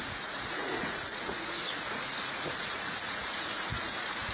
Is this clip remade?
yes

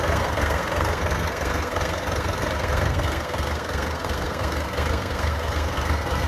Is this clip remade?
yes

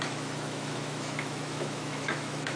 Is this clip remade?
yes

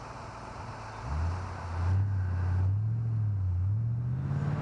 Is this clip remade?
no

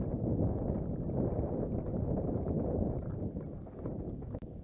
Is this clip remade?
no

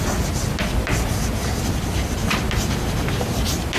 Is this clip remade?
no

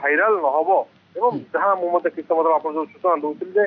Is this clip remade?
no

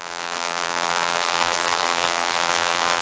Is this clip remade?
yes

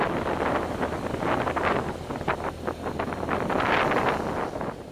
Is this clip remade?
no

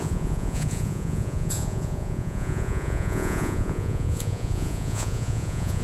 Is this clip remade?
yes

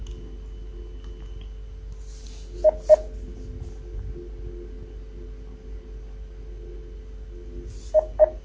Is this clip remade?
no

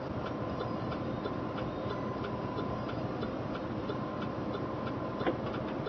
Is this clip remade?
no